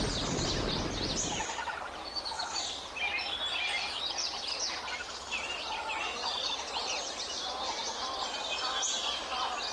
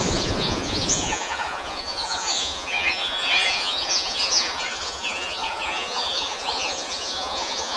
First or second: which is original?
first